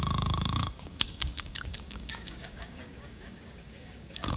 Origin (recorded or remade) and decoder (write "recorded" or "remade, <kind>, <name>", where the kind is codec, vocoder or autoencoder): remade, codec, DAC